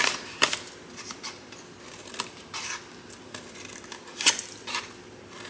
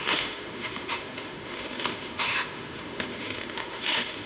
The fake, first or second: second